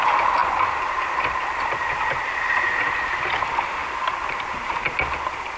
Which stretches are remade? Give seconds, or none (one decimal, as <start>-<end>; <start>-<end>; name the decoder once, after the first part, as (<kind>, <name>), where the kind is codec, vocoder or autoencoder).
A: 0.4-1.5 (vocoder, BigVGAN v2); 3.8-4.8